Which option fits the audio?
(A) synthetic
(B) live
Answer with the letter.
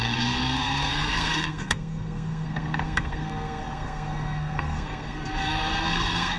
A